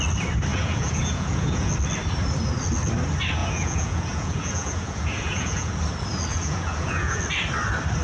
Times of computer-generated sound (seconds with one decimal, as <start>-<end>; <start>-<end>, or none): 0.5-1.7; 3.4-5.8; 6.3-7.2